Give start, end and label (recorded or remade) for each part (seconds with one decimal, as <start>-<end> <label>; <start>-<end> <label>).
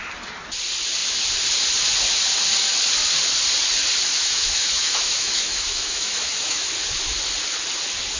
0.0-4.1 recorded; 4.1-6.7 remade; 6.7-8.2 recorded